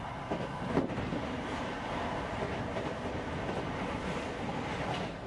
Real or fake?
real